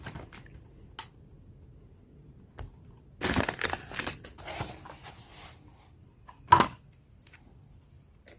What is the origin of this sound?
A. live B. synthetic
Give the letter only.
A